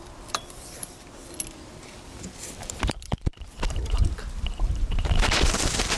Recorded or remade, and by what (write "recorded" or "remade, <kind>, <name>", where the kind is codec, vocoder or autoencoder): remade, vocoder, BigVGAN v2